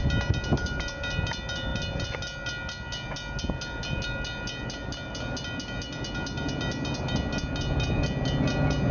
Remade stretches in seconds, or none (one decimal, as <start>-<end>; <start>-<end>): none